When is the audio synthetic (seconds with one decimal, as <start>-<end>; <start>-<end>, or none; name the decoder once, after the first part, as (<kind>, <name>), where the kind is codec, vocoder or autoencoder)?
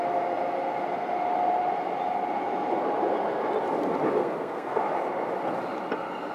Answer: 4.2-4.8 (codec, SNAC)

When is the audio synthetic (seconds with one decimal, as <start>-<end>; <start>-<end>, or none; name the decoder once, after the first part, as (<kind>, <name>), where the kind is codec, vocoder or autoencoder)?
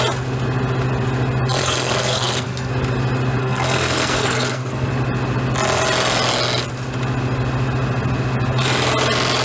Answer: 1.6-2.7 (codec, SNAC); 3.4-4.9